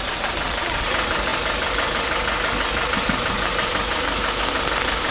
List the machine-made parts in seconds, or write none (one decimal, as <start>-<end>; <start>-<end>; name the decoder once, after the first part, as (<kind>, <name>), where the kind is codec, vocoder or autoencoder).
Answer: none